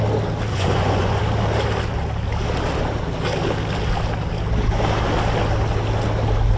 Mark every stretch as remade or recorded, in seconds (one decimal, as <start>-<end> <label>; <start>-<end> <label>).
0.0-0.5 recorded; 0.5-1.2 remade; 1.2-6.6 recorded